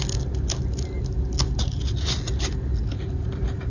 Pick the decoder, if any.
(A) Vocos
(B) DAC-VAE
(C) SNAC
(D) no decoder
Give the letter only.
D